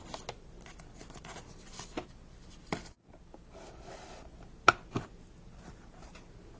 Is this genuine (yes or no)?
yes